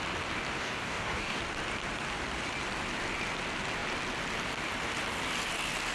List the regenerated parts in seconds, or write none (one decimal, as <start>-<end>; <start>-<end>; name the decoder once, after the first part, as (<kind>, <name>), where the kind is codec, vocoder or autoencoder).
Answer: 0.6-1.4 (codec, DAC)

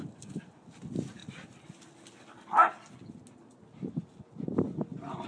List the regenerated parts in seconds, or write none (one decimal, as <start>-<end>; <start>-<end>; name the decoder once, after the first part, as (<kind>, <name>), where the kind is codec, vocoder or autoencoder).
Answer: none

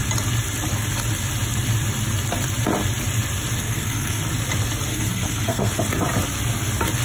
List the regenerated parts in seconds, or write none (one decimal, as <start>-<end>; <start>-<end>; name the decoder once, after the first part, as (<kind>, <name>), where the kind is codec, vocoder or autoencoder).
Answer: 3.6-4.2 (codec, SNAC); 4.9-5.7

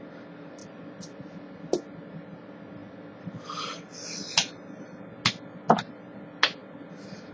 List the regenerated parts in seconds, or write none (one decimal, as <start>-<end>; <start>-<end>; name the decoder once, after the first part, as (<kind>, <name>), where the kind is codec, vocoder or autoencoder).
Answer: 0.6-1.6 (vocoder, BigVGAN v2); 6.6-7.3

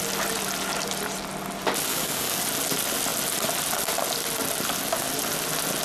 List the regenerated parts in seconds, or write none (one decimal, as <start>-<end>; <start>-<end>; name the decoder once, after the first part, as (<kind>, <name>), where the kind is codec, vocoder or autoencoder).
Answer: 1.9-2.4 (codec, DAC)